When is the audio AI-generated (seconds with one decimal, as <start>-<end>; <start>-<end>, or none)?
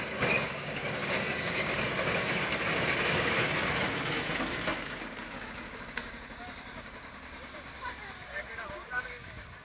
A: 0.0-9.6